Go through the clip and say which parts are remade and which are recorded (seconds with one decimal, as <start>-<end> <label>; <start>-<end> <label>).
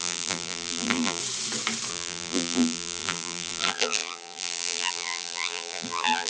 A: 0.0-1.2 remade; 1.2-1.9 recorded; 1.9-6.3 remade